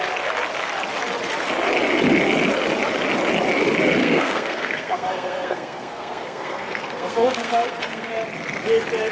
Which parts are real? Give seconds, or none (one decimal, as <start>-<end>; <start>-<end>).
0.0-4.0; 8.1-9.1